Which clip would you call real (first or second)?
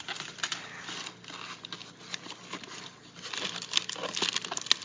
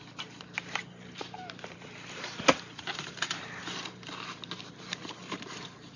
first